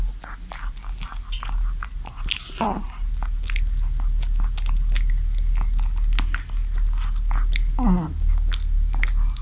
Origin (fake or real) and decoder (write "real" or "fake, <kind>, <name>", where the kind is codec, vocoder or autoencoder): real